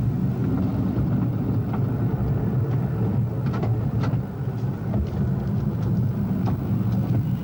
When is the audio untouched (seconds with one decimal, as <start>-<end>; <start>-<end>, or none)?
0.0-7.4